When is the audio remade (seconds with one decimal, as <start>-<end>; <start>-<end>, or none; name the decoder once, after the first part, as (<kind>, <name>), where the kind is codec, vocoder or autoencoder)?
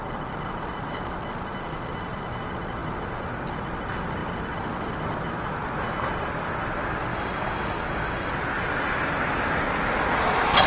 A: 7.1-8.3 (codec, DAC)